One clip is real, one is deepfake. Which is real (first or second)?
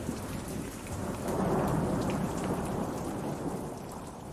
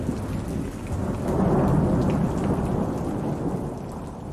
second